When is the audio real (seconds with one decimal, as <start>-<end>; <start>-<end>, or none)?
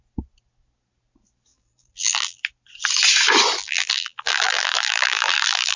0.0-1.5; 2.4-3.6